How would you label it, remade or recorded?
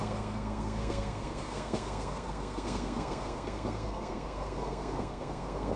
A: remade